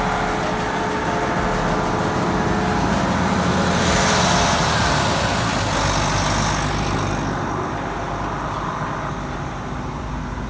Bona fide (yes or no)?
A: yes